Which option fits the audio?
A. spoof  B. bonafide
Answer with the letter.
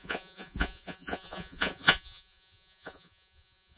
A